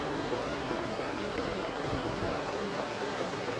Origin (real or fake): fake